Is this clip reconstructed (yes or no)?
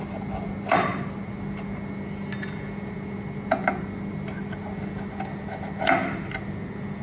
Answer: no